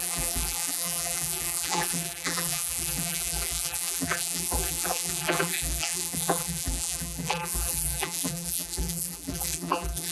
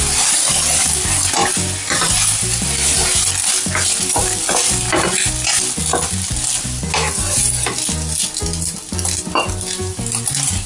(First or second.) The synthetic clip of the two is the first